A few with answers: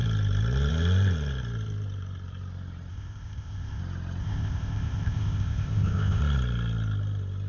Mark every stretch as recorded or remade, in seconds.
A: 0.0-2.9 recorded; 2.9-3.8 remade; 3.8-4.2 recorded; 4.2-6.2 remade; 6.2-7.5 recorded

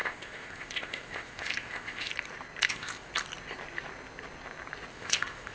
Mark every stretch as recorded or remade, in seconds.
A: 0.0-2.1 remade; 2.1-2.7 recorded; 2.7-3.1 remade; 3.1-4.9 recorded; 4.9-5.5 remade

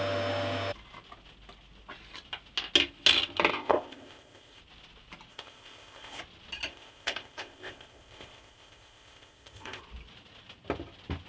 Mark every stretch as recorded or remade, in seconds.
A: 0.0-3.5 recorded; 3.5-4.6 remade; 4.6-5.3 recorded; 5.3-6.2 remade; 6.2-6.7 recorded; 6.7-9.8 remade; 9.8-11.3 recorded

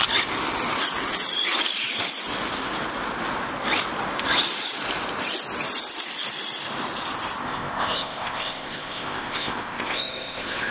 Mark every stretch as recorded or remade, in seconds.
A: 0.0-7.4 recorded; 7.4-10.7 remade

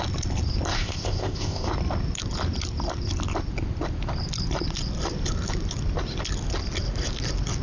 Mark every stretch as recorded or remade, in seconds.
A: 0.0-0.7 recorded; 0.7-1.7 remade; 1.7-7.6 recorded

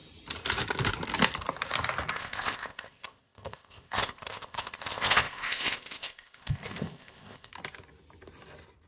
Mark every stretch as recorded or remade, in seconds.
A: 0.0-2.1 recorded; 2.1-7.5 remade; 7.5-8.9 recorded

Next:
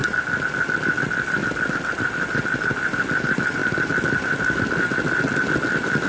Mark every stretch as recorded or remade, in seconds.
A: 0.0-6.1 recorded